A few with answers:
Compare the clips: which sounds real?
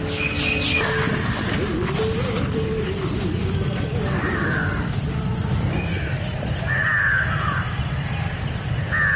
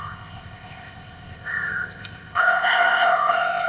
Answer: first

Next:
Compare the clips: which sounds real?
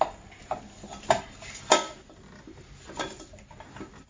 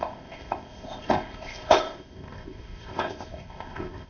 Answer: first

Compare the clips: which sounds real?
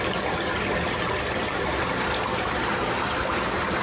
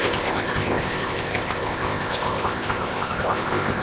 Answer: first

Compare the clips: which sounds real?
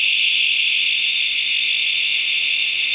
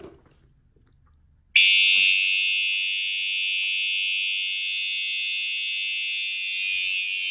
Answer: second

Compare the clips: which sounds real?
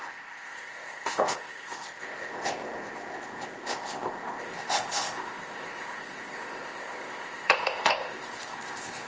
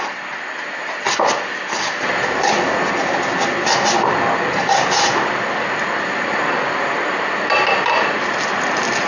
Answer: second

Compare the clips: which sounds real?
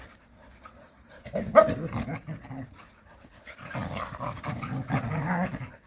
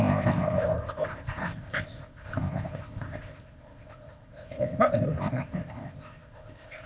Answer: first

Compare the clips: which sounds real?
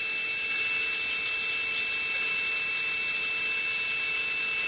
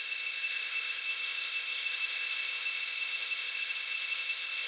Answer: first